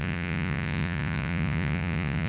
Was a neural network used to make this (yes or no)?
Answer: yes